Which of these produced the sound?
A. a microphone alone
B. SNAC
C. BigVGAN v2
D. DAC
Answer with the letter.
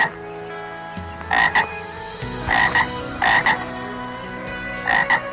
A